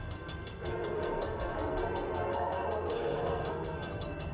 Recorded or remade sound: remade